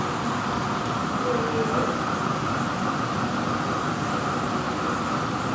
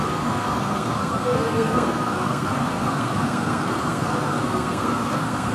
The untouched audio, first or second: first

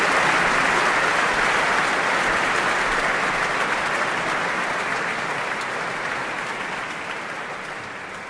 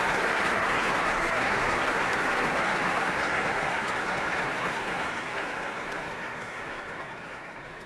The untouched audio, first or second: first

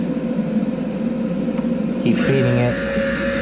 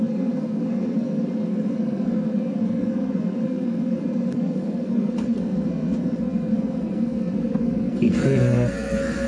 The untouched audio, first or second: first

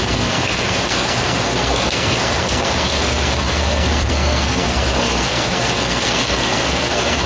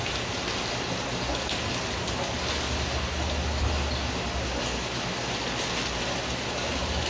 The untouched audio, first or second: second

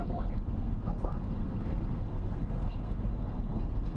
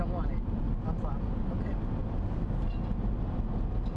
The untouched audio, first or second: second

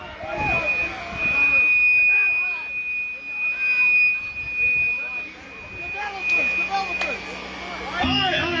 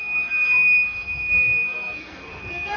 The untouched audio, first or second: first